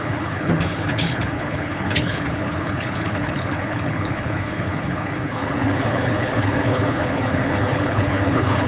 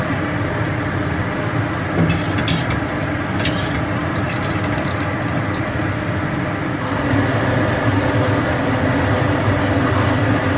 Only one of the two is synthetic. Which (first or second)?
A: first